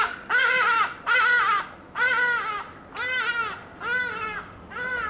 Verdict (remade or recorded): recorded